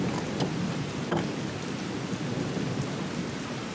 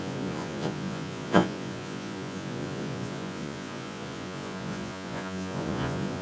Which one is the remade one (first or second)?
second